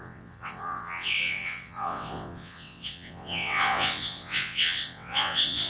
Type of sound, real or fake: fake